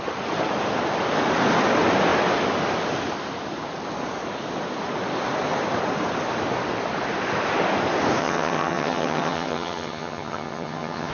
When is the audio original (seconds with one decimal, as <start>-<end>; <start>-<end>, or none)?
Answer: 0.0-8.2